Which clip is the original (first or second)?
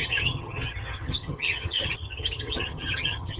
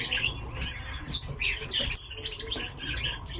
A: second